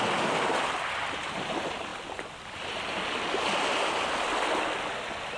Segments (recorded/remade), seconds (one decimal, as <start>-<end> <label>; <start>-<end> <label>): 0.0-5.4 recorded